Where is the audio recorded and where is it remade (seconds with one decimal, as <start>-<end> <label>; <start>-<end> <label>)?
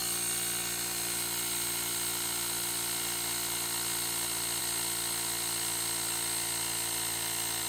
0.0-7.7 recorded